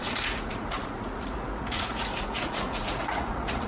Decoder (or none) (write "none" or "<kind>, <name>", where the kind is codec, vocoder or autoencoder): vocoder, Vocos